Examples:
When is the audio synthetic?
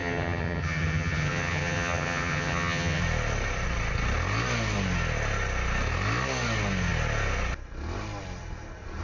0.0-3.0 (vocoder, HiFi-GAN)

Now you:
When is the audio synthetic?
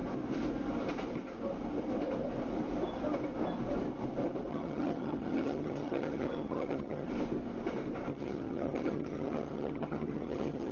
4.5-7.1 (vocoder, HiFi-GAN); 8.1-10.7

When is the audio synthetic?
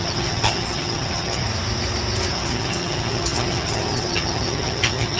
0.0-1.4 (vocoder, HiFi-GAN); 2.3-5.2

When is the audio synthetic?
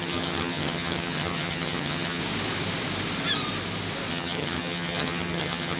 0.0-2.2 (vocoder, HiFi-GAN); 4.1-5.8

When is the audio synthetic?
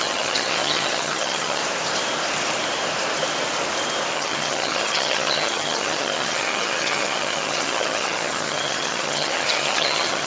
0.0-1.6 (vocoder, HiFi-GAN); 4.1-10.3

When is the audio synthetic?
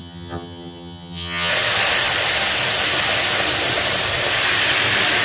0.0-1.5 (vocoder, HiFi-GAN)